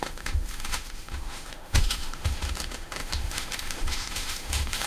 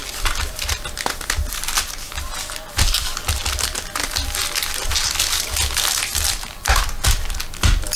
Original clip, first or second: second